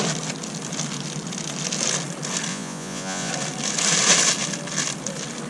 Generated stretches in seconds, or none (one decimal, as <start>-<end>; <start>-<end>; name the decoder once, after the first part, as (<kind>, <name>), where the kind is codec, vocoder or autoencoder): 2.5-3.3 (vocoder, Vocos)